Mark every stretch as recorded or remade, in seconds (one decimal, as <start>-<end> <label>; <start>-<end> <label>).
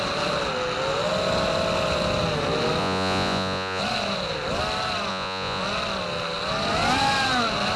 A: 0.0-2.8 recorded; 2.8-3.8 remade; 3.8-5.1 recorded; 5.1-5.6 remade; 5.6-7.8 recorded